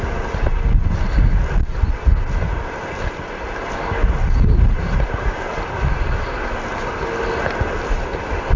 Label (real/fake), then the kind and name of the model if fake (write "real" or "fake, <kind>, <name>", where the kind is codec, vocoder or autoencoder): real